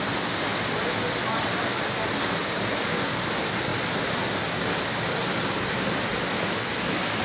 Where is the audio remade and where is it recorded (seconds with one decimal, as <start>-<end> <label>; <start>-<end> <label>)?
0.0-7.2 recorded